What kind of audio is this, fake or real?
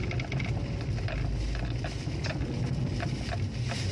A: real